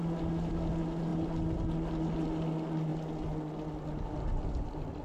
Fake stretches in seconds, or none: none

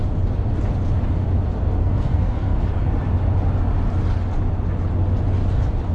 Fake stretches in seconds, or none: 1.8-2.6

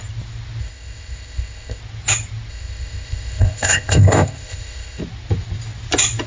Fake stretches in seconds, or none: 0.6-1.8; 2.5-5.0

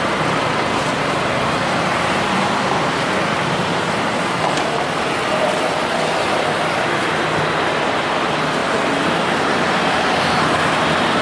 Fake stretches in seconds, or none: none

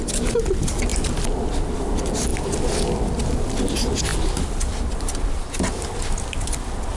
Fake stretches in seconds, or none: none